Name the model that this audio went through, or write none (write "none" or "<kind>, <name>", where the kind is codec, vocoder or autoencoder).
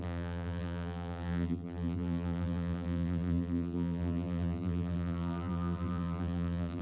vocoder, BigVGAN v2